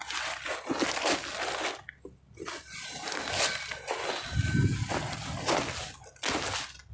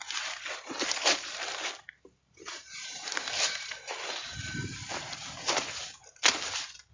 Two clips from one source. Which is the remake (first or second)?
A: second